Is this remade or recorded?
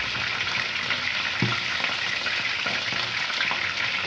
recorded